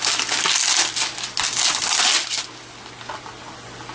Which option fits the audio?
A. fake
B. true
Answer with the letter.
B